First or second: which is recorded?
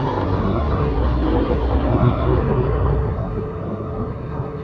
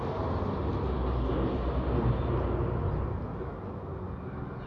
second